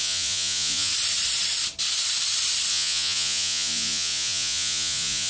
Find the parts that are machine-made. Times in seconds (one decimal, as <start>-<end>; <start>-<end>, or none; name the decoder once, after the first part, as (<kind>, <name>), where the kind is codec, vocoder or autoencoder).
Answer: 0.0-0.9 (vocoder, Vocos); 2.7-5.3

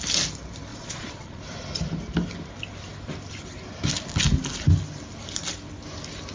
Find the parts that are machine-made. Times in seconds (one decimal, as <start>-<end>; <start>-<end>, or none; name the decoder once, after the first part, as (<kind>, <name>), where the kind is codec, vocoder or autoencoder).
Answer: 0.7-1.4 (vocoder, Vocos)

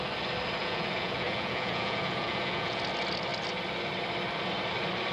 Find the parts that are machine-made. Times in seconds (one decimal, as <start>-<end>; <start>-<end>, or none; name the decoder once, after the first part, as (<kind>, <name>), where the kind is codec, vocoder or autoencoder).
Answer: 0.6-2.8 (vocoder, Vocos)

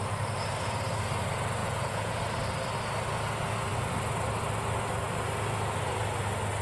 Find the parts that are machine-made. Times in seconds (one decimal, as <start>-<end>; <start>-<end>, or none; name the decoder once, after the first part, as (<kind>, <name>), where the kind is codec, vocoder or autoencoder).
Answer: 1.6-2.2 (vocoder, Vocos)

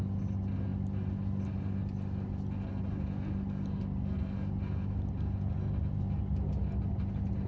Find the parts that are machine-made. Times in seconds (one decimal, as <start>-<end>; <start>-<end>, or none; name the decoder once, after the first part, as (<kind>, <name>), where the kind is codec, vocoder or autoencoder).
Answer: none

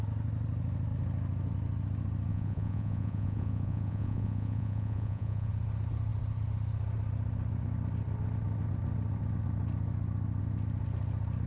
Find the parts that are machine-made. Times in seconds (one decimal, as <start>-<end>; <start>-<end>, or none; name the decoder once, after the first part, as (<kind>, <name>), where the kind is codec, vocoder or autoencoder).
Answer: 2.3-5.5 (vocoder, Vocos)